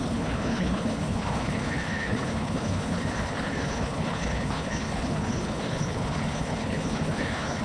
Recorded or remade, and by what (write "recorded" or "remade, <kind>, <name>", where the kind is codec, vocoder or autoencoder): remade, codec, HILCodec